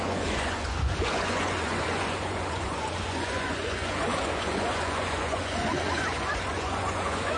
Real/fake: fake